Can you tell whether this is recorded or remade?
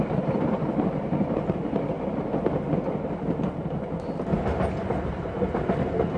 recorded